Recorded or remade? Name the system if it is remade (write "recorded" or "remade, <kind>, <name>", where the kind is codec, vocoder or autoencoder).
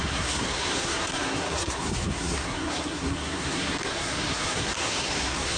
remade, codec, SNAC